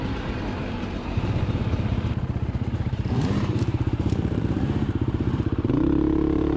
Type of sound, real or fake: fake